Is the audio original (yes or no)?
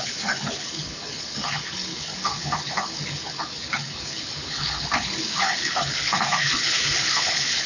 no